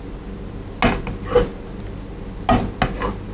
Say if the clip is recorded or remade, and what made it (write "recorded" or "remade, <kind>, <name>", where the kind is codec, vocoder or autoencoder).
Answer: recorded